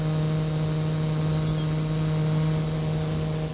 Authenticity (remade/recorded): recorded